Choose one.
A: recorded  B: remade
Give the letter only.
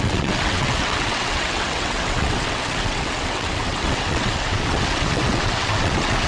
B